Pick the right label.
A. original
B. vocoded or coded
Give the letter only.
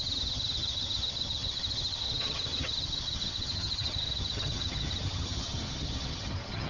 B